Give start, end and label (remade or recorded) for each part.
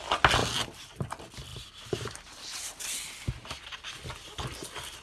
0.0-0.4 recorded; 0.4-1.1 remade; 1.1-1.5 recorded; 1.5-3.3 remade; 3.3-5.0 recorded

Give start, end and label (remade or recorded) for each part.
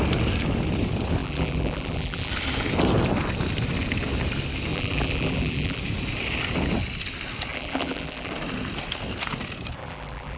0.0-1.2 recorded; 1.2-2.3 remade; 2.3-4.7 recorded; 4.7-5.8 remade; 5.8-7.5 recorded; 7.5-8.3 remade; 8.3-9.8 recorded; 9.8-10.4 remade